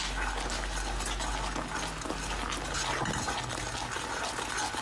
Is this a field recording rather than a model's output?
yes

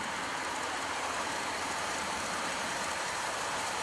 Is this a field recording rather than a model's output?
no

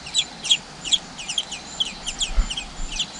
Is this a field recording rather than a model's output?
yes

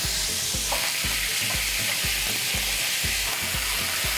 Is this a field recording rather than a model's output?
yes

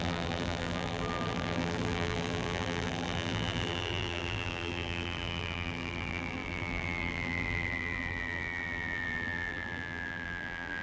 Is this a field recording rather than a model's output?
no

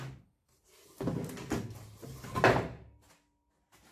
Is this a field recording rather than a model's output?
yes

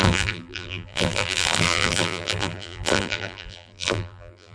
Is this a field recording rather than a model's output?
no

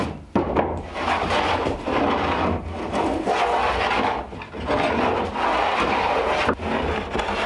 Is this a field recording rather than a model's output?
yes